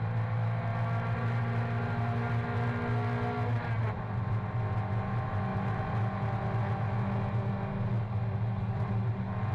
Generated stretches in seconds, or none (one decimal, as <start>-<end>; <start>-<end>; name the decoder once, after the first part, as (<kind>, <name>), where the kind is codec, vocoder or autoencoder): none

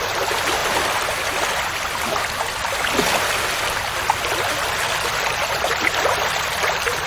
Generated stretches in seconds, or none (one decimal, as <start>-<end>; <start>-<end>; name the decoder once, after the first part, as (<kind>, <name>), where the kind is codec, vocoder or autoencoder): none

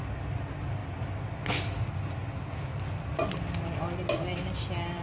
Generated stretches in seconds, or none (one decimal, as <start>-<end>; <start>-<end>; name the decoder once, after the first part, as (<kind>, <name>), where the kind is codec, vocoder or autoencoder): none

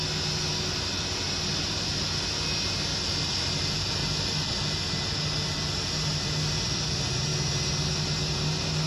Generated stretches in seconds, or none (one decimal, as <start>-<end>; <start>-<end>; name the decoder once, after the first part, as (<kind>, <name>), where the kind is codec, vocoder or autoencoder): 2.9-3.6 (vocoder, BigVGAN v2); 4.0-4.6